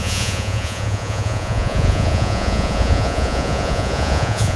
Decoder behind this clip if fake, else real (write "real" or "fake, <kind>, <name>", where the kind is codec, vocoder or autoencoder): fake, vocoder, Vocos